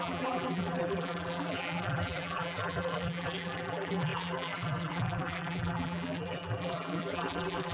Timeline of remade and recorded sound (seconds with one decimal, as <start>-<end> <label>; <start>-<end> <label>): 0.0-7.7 remade